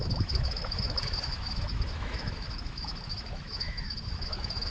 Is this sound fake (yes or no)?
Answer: yes